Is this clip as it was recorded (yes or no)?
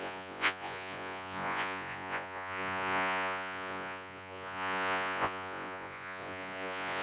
no